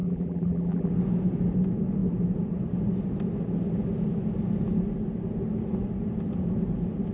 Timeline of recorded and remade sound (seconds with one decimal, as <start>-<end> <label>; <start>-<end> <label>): 0.0-0.9 remade; 0.9-7.1 recorded